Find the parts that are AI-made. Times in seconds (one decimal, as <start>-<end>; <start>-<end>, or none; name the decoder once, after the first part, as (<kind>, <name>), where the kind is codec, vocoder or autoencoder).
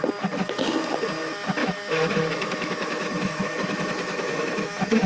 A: 1.6-5.1 (autoencoder, DAC-VAE)